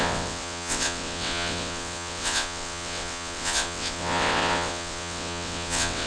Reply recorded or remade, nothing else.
remade